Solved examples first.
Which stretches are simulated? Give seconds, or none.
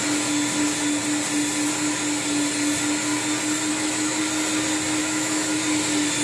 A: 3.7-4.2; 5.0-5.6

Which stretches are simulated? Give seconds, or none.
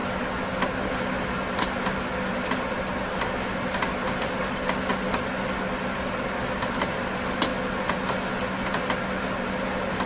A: none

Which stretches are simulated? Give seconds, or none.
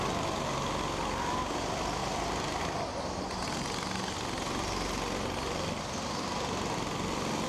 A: none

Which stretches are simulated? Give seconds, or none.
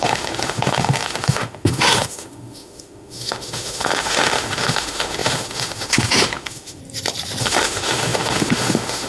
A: 0.0-6.8; 7.4-9.1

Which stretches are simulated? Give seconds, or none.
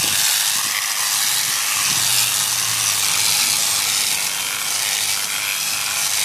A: none